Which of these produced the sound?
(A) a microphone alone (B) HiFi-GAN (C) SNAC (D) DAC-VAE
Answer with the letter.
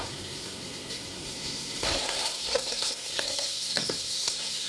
C